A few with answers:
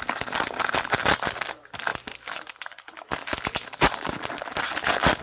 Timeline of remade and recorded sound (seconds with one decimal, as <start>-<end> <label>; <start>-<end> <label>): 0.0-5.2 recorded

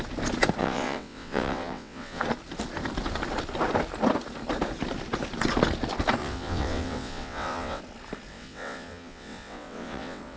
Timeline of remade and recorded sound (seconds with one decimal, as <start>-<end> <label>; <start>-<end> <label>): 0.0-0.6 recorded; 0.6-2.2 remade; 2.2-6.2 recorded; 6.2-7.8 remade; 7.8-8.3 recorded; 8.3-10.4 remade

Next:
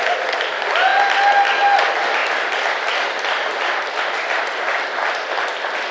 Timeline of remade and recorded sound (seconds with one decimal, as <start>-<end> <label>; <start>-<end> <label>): 0.0-0.9 recorded; 0.9-1.5 remade; 1.5-5.9 recorded